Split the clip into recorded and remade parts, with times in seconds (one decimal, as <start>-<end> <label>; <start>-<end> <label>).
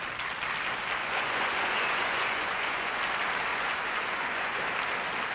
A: 0.0-1.0 recorded; 1.0-3.0 remade; 3.0-3.5 recorded; 3.5-4.6 remade; 4.6-5.3 recorded